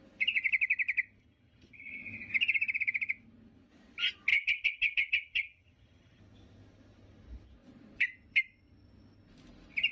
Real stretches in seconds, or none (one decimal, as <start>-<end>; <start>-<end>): 0.0-1.2; 2.0-4.3; 6.2-9.9